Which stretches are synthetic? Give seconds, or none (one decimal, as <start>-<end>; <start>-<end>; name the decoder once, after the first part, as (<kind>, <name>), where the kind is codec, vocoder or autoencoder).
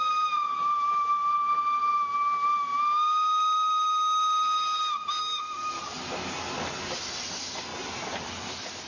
5.2-5.8 (autoencoder, DAC-VAE)